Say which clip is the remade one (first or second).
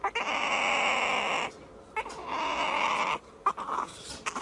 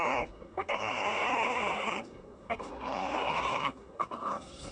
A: second